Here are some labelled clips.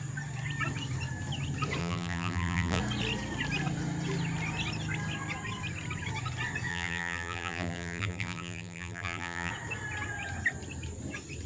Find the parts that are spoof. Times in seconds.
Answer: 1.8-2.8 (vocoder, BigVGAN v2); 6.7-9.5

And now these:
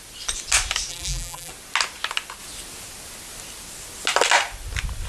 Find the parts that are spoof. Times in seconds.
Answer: 0.9-1.5 (vocoder, BigVGAN v2)

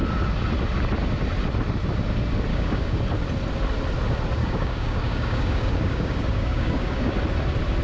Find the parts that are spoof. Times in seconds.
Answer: 2.5-3.0 (codec, DAC); 4.4-7.2

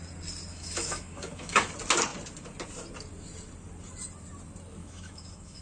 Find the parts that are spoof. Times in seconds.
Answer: 0.5-1.7 (autoencoder, DAC-VAE); 4.8-5.6